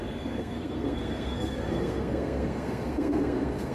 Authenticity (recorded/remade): remade